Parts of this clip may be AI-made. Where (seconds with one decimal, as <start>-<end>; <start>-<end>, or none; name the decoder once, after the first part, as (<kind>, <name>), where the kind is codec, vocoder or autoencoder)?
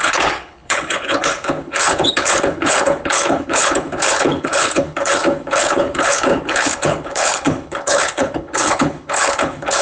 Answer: 0.0-9.8 (codec, HILCodec)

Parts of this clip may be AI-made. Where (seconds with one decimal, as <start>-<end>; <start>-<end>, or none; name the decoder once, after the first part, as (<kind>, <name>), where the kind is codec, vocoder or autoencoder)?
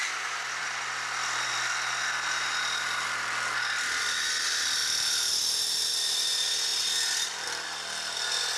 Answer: 0.0-0.8 (vocoder, BigVGAN v2)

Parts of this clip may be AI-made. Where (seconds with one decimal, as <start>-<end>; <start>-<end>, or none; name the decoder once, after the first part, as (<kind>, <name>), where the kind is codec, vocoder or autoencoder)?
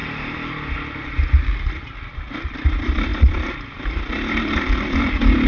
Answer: 1.7-5.5 (vocoder, BigVGAN v2)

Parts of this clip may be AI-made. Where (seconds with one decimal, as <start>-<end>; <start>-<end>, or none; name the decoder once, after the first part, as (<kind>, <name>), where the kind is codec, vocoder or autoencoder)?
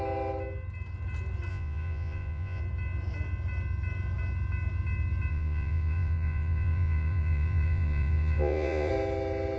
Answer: 1.5-2.6 (vocoder, Vocos); 5.3-8.9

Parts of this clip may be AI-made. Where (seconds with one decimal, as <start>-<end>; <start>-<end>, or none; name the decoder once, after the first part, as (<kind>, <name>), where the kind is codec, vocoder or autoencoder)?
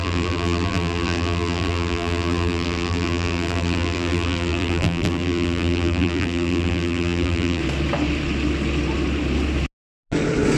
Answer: 0.0-7.6 (vocoder, BigVGAN v2)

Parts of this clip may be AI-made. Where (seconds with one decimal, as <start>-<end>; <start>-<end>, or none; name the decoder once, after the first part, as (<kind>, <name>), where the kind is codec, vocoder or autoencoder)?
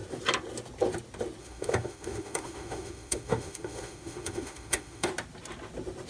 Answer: 1.4-5.1 (autoencoder, DAC-VAE)